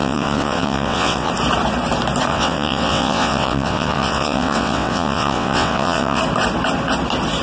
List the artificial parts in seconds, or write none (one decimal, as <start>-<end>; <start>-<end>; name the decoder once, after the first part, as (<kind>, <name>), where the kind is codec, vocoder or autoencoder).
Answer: 0.0-1.3 (vocoder, WaveNeXt); 2.3-6.2